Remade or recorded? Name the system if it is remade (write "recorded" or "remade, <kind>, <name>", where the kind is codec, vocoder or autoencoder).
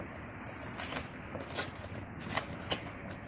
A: recorded